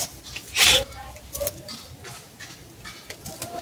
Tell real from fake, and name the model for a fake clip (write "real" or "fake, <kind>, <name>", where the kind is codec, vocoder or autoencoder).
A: real